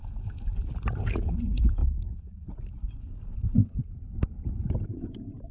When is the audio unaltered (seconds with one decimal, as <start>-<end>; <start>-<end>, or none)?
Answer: 0.0-4.6